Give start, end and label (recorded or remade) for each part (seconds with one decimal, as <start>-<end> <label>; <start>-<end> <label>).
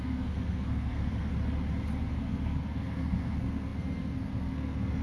0.0-1.3 remade; 1.3-2.1 recorded; 2.1-5.0 remade